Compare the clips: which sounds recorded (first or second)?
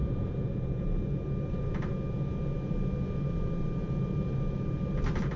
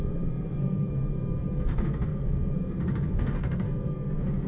first